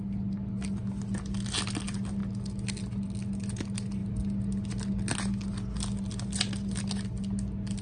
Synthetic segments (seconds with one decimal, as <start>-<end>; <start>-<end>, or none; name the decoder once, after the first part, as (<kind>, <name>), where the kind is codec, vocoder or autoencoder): none